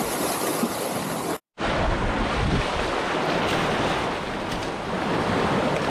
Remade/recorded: recorded